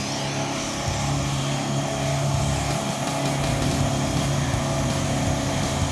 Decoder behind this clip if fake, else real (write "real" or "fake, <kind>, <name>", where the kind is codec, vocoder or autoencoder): real